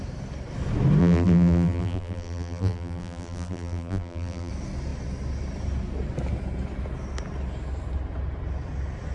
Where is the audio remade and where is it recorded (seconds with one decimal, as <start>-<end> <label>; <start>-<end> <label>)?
0.0-1.0 recorded; 1.0-4.5 remade; 4.5-9.1 recorded